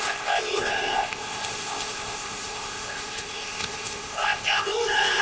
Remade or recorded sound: remade